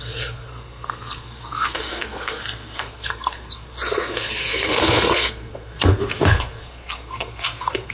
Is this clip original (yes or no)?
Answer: no